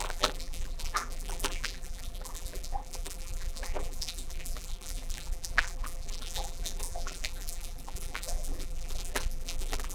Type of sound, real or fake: fake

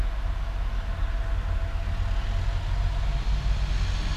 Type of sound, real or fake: real